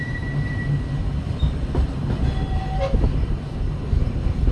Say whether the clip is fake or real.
real